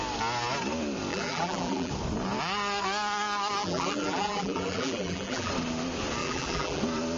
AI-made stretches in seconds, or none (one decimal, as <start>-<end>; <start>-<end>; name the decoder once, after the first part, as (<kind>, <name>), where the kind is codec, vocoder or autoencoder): 1.1-1.9 (vocoder, BigVGAN v2); 3.6-5.5; 6.2-6.8

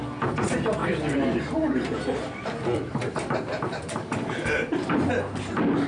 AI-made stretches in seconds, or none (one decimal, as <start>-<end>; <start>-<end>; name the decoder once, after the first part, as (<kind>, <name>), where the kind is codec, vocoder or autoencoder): 0.8-4.3 (vocoder, BigVGAN v2)

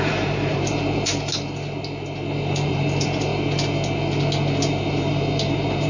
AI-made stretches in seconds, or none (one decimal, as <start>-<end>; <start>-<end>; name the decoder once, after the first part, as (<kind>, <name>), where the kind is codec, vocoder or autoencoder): 0.0-1.3 (vocoder, BigVGAN v2); 2.5-3.3; 4.9-5.9

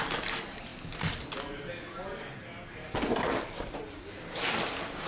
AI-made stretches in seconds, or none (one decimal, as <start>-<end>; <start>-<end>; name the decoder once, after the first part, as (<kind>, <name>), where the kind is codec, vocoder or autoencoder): 0.0-0.7 (vocoder, BigVGAN v2); 3.8-5.1

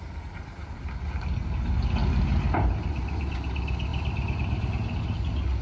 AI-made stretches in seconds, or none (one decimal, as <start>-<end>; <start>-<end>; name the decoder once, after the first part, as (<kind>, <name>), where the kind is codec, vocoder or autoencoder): 2.0-3.3 (vocoder, BigVGAN v2); 3.9-5.0

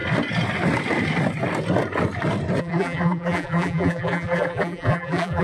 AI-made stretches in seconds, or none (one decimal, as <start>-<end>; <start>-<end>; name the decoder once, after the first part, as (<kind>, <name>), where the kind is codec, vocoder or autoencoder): 2.6-5.4 (vocoder, BigVGAN v2)